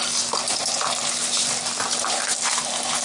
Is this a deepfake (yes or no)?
no